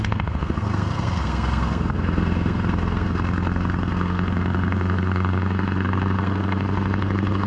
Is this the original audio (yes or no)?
no